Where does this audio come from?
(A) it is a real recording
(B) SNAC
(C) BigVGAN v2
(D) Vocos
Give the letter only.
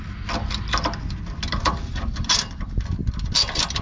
A